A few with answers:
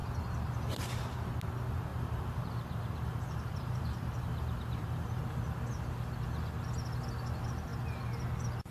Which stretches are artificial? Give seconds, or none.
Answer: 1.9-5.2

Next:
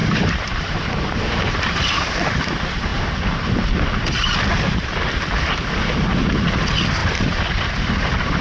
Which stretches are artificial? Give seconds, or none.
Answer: 0.0-2.4; 2.9-3.8; 7.0-8.4

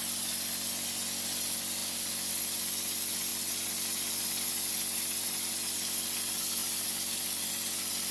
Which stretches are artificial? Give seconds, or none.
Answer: 1.8-2.3; 3.3-4.5; 6.6-8.1

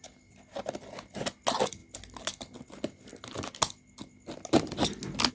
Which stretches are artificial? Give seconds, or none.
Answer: none

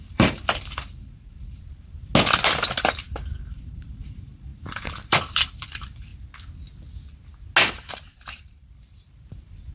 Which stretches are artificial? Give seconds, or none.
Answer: 0.0-2.1; 2.9-6.1; 7.9-9.7

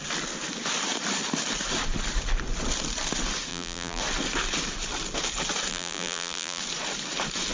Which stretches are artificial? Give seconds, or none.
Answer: 3.5-4.0; 5.7-6.6